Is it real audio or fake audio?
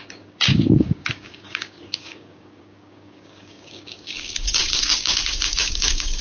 fake